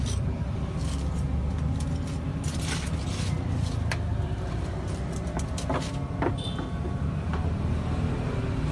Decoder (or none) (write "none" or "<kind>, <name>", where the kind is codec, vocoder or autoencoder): none